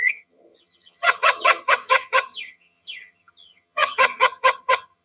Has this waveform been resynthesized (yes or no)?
yes